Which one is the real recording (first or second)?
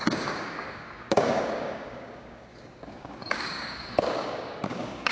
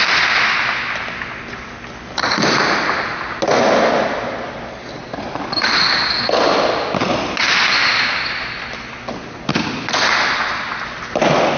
second